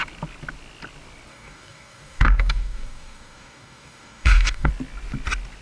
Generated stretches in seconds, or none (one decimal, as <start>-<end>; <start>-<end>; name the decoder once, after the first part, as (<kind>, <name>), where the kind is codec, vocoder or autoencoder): 1.3-4.7 (codec, DAC)